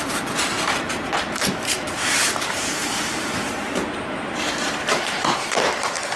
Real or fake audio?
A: fake